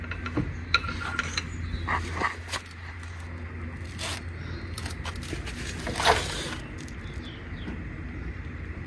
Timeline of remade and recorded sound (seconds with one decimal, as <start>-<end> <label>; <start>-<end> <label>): 0.0-8.9 recorded